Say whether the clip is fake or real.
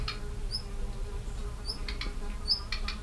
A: real